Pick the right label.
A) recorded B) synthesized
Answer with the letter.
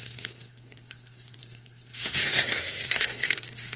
B